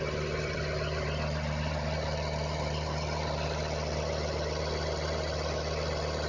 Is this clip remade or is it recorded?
remade